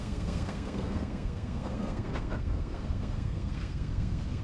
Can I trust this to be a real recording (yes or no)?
no